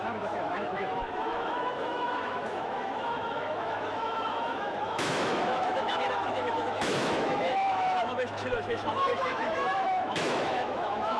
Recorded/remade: remade